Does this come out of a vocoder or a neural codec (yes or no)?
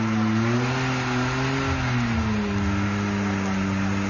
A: no